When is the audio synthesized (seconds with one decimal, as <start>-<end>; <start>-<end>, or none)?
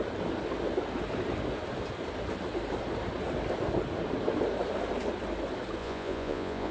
5.8-6.7